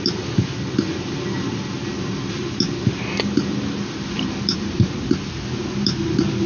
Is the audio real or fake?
real